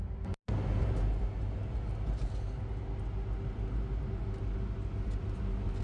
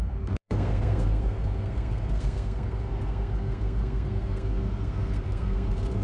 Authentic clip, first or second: first